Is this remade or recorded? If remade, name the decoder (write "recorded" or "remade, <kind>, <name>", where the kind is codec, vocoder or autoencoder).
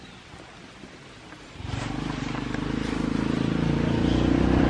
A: recorded